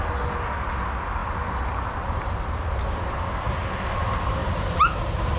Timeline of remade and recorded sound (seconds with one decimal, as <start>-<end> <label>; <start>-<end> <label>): 0.0-4.4 recorded; 4.4-5.4 remade